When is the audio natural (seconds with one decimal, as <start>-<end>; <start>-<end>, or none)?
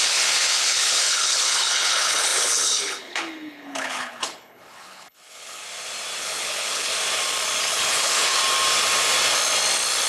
5.6-6.2; 6.9-7.6; 8.4-10.1